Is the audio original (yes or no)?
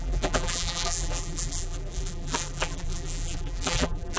no